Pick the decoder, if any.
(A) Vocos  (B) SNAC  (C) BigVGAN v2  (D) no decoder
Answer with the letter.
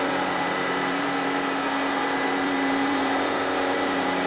C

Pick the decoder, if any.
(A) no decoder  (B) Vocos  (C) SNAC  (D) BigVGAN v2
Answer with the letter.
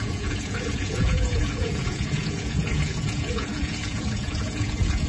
B